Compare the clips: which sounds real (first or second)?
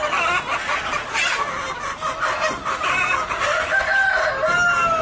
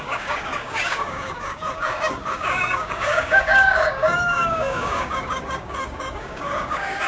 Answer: first